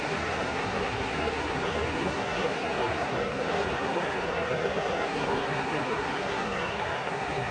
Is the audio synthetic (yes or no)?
yes